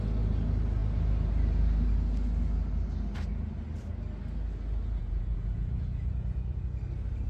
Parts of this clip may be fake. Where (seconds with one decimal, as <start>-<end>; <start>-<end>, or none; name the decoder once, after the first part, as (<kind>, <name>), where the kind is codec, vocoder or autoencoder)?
5.0-6.8 (vocoder, Vocos)